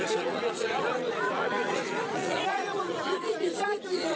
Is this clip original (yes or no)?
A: no